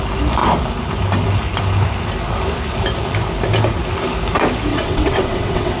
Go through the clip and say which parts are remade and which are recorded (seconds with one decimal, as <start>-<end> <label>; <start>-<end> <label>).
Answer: 0.0-4.7 recorded; 4.7-5.8 remade